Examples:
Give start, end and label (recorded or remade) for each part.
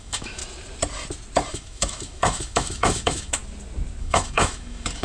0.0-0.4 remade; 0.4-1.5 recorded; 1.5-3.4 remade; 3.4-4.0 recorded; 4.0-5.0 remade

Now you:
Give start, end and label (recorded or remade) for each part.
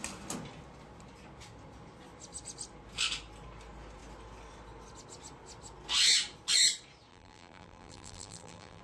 0.0-7.1 recorded; 7.1-8.8 remade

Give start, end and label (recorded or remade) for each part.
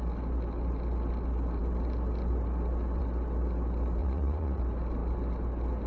0.0-4.0 recorded; 4.0-4.6 remade; 4.6-5.9 recorded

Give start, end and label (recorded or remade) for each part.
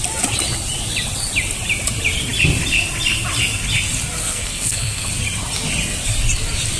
0.0-4.2 recorded; 4.2-5.1 remade; 5.1-6.8 recorded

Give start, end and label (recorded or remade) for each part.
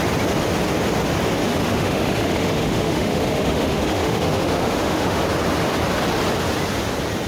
0.0-1.5 recorded; 1.5-5.2 remade; 5.2-7.3 recorded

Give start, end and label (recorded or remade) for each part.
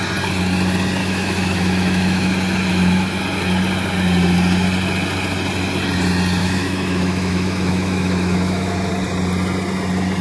0.0-1.0 recorded; 1.0-2.3 remade; 2.3-2.7 recorded; 2.7-3.2 remade; 3.2-6.4 recorded; 6.4-8.9 remade; 8.9-10.2 recorded